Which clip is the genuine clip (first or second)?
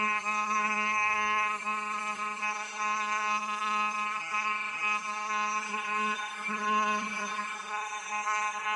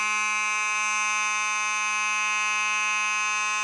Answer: second